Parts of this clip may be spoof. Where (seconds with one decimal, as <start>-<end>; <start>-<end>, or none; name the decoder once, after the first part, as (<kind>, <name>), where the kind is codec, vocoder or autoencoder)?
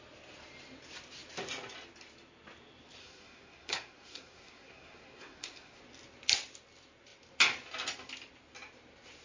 3.0-5.8 (codec, SNAC)